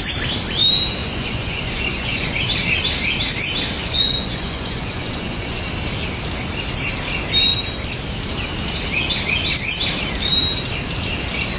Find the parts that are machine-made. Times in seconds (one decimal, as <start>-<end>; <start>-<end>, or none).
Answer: 1.0-2.4; 3.8-5.6